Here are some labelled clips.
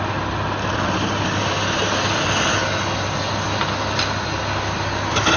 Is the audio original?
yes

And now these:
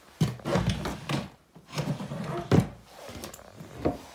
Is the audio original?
yes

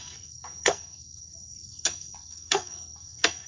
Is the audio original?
no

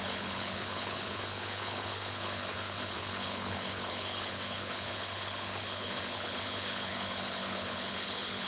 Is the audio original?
no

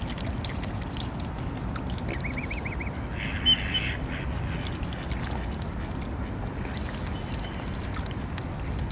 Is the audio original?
yes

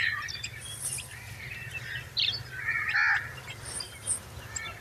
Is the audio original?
yes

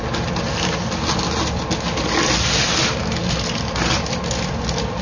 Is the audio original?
yes